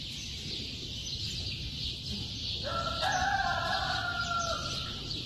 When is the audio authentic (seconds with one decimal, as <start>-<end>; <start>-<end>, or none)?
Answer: 0.0-3.4; 4.0-5.3

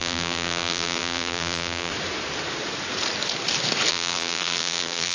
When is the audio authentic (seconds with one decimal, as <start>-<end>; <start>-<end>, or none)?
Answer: 1.9-3.9